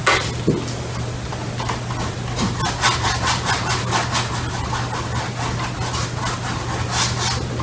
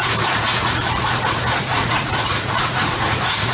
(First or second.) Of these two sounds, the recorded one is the first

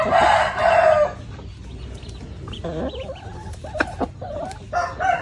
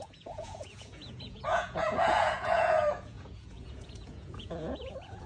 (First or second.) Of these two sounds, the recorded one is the first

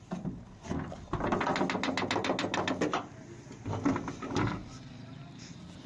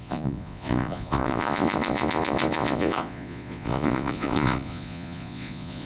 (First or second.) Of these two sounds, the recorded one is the first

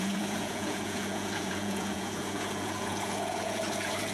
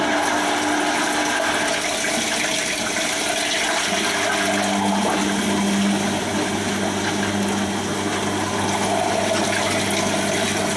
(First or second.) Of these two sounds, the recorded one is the second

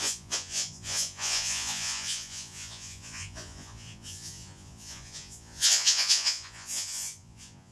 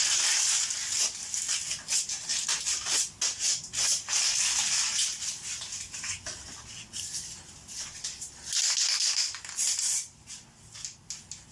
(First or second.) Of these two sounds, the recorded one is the second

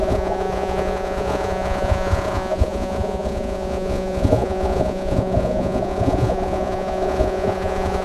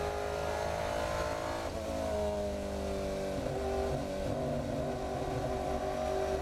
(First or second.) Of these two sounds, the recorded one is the second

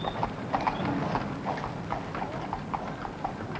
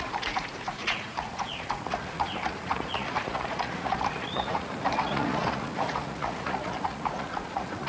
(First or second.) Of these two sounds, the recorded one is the first